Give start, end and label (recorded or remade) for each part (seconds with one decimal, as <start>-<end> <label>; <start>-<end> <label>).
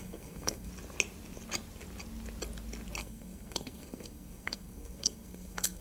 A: 0.0-0.7 remade; 0.7-3.0 recorded; 3.0-5.8 remade